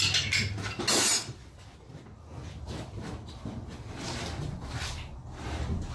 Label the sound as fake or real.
real